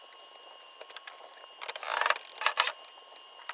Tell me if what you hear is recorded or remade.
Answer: recorded